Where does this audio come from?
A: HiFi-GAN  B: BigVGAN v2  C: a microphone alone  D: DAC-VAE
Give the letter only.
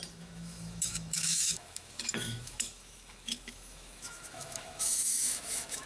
D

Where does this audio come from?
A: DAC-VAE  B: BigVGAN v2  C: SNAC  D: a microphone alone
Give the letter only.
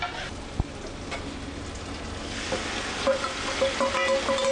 D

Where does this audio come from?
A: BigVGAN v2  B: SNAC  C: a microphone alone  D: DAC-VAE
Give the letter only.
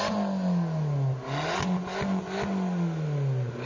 C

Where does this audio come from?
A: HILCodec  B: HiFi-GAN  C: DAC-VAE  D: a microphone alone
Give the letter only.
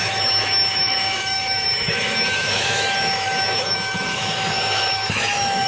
C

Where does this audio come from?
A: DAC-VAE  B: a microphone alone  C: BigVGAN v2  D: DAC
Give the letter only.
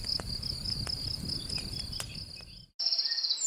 B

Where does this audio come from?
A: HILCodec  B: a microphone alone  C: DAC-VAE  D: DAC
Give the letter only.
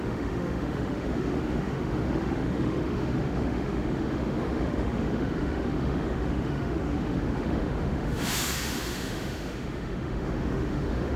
C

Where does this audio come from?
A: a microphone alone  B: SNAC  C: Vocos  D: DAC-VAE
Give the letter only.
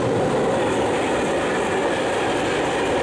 A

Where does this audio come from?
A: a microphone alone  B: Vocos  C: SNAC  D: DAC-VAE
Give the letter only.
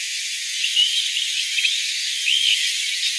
D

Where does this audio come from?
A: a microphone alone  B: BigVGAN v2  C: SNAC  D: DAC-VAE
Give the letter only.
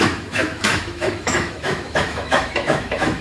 D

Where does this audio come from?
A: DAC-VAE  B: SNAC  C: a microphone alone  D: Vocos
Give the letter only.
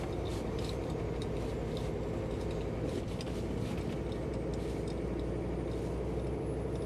C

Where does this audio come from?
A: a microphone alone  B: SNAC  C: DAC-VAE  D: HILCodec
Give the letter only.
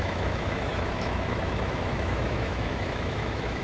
C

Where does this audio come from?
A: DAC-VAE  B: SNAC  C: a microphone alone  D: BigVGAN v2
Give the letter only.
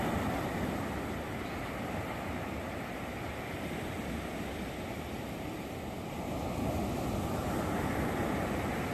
C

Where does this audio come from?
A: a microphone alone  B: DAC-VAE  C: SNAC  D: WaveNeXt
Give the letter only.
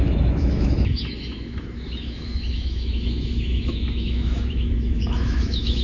B